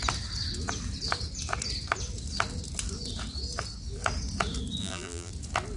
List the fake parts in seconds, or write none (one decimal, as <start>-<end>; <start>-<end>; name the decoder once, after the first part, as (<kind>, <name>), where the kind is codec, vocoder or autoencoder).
4.8-5.3 (vocoder, BigVGAN v2)

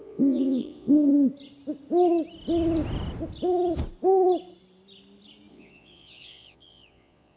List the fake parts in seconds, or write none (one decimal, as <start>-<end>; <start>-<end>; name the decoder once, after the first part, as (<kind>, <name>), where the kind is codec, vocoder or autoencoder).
0.0-1.1 (vocoder, Vocos); 5.5-7.4

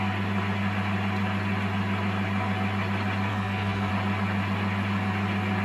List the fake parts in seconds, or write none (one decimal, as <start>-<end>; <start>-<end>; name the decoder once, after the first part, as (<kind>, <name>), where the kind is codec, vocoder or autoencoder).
3.3-3.9 (codec, SNAC)